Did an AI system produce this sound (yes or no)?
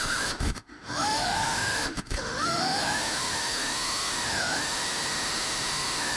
yes